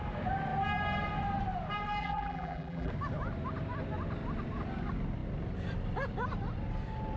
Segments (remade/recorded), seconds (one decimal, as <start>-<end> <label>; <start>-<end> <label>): 0.0-2.0 recorded; 2.0-2.9 remade; 2.9-7.2 recorded